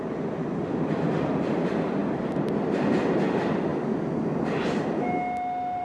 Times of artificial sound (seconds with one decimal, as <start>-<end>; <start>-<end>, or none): none

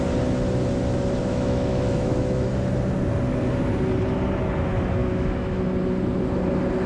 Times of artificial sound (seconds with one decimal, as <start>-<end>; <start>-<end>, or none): 1.2-2.5; 5.0-5.6

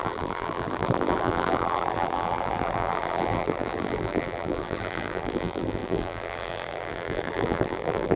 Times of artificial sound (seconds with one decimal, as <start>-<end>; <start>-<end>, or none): 0.0-8.2

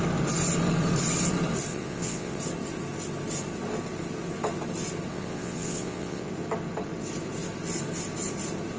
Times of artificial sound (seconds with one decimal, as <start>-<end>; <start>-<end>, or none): 1.7-2.4; 5.1-6.3

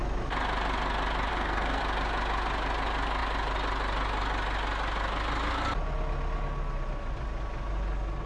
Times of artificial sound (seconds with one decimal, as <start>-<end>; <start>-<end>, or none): 1.3-1.8

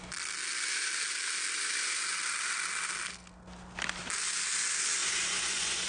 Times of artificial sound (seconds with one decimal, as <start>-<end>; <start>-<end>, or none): 5.0-5.9

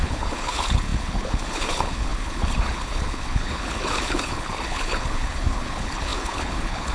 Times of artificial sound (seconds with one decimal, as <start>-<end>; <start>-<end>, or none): 0.0-6.9